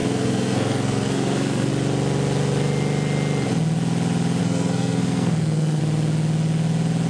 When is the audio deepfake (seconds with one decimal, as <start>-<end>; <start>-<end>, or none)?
0.0-1.7; 4.4-5.8